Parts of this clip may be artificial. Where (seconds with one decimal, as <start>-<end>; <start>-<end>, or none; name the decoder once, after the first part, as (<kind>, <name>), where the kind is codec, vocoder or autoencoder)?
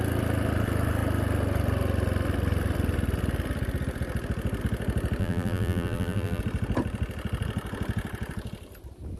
5.2-6.4 (vocoder, BigVGAN v2)